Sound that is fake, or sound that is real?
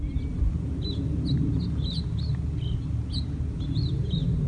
real